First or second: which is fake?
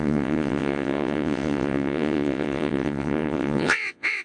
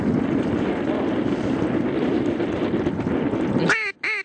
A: first